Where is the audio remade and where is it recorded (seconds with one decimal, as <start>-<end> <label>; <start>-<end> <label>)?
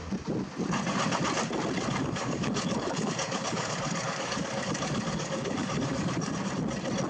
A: 0.0-2.0 recorded; 2.0-6.3 remade; 6.3-7.1 recorded